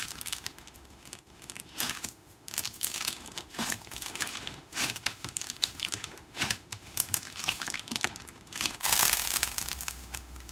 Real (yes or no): no